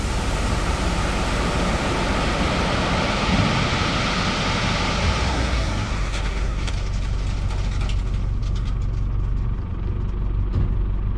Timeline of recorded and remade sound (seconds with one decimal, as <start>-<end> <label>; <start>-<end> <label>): 0.0-5.3 recorded; 5.3-6.7 remade; 6.7-11.2 recorded